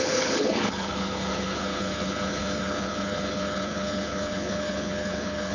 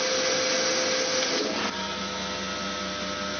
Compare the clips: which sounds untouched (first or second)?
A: second